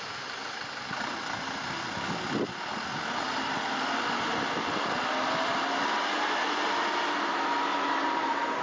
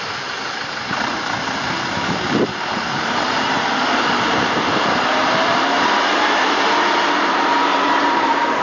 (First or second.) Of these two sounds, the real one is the first